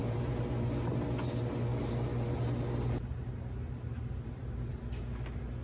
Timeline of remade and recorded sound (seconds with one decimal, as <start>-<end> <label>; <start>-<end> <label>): 0.0-0.5 remade; 0.5-3.3 recorded; 3.3-4.7 remade; 4.7-5.6 recorded